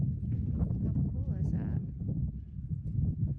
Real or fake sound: real